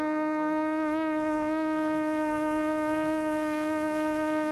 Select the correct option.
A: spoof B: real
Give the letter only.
A